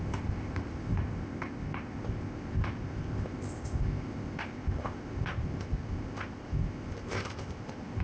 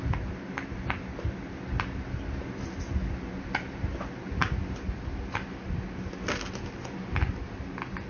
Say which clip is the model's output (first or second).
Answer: first